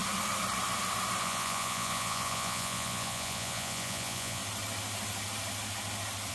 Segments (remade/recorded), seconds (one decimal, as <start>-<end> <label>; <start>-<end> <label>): 0.0-1.2 recorded; 1.2-4.4 remade; 4.4-6.3 recorded